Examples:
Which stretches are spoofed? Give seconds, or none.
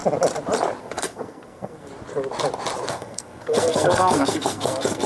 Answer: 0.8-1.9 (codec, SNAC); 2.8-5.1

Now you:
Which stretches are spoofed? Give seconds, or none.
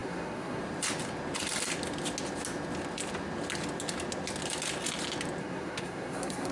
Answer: 0.0-0.6 (codec, SNAC); 5.4-6.5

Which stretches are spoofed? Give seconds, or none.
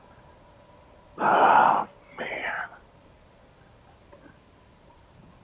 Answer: none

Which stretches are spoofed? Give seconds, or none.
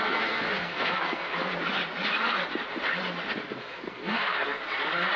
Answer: 0.0-1.3 (codec, SNAC); 3.7-4.6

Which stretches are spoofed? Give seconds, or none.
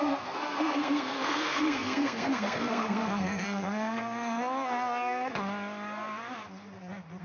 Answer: 0.0-5.3 (codec, SNAC)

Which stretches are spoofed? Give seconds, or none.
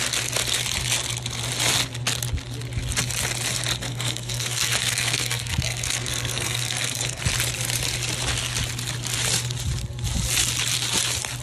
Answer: 3.9-7.2 (codec, SNAC)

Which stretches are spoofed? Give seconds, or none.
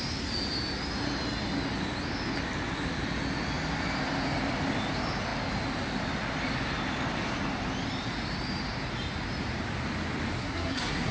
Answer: 10.4-11.1 (codec, SNAC)